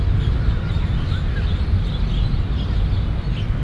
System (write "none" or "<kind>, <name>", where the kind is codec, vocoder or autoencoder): none